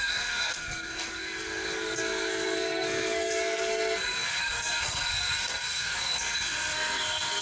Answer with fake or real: fake